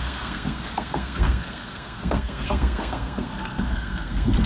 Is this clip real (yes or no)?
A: no